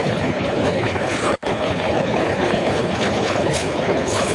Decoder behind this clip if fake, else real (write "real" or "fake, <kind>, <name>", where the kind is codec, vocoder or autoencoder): fake, codec, HILCodec